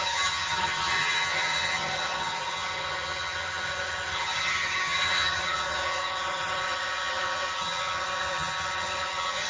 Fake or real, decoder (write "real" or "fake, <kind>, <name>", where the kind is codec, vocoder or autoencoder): fake, vocoder, HiFi-GAN